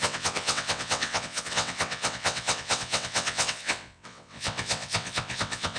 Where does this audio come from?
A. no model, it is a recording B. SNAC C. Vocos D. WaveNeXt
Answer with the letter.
D